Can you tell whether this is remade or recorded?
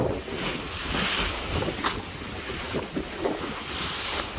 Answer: recorded